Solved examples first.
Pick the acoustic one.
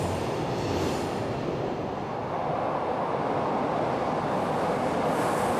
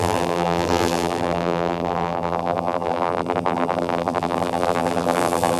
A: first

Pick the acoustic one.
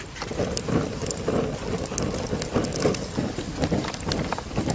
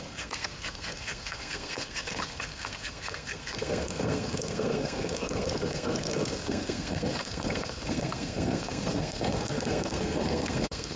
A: first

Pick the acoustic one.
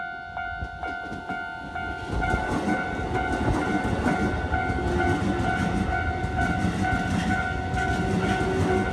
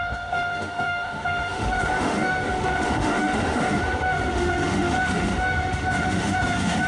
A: first